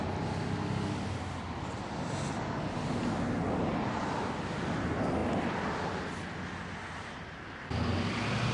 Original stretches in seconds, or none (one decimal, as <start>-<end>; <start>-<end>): 0.0-0.6; 1.2-8.5